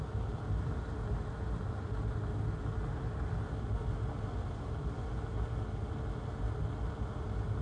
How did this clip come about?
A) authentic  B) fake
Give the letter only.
A